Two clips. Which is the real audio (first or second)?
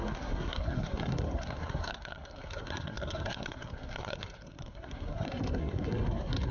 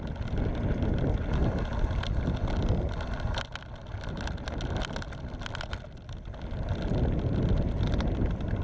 second